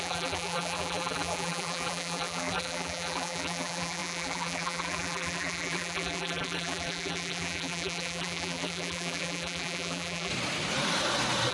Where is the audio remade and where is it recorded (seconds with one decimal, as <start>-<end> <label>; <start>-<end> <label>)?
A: 0.0-10.3 remade; 10.3-11.5 recorded